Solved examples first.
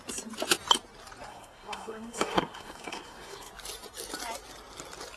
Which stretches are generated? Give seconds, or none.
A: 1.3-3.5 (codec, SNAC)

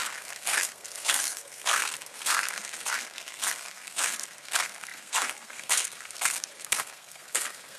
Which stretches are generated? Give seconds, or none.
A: 0.0-7.8 (codec, SNAC)

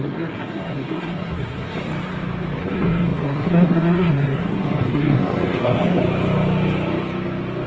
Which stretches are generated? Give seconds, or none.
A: 0.0-1.8 (codec, SNAC); 2.6-6.0

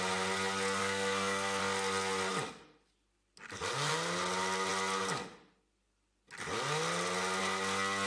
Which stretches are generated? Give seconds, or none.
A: 0.8-1.6 (codec, SNAC)

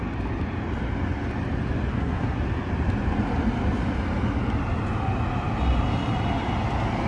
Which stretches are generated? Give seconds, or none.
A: 1.9-2.4 (codec, SNAC)

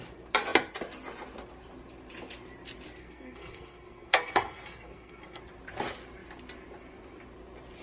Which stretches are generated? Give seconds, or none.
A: 3.0-5.4 (codec, SNAC)

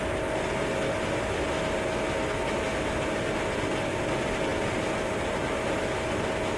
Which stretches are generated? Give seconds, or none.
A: none

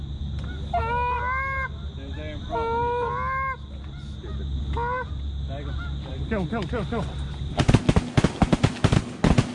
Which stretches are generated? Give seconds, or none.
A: none